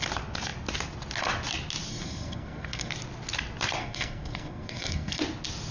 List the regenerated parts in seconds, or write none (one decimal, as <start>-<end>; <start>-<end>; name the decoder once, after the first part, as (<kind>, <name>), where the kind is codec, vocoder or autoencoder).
1.9-2.9 (codec, SNAC); 3.8-5.2